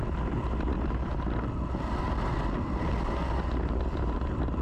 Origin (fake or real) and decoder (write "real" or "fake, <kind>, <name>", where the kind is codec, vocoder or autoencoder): real